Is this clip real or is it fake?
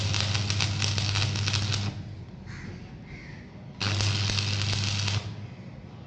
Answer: real